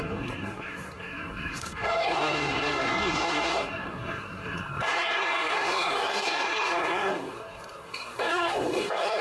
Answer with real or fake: fake